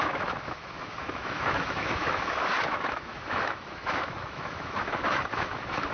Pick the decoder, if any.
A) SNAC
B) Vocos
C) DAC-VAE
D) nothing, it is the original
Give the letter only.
C